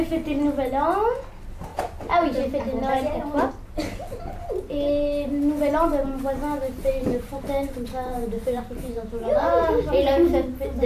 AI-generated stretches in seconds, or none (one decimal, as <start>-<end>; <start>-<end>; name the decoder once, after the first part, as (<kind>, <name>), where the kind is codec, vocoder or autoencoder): 1.7-3.5 (vocoder, BigVGAN v2); 6.6-10.3